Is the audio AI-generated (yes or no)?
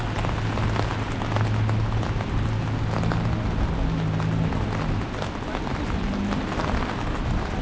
no